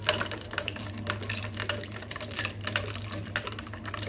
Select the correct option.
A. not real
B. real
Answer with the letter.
B